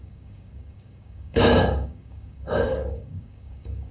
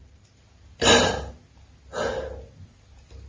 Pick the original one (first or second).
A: second